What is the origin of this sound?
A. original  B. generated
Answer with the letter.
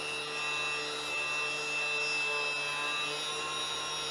A